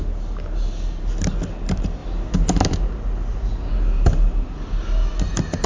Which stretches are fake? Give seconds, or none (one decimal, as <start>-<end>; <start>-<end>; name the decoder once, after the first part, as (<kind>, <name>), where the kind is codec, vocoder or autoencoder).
none